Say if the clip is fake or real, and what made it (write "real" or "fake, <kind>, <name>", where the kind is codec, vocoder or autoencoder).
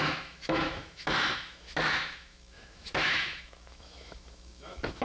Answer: fake, autoencoder, DAC-VAE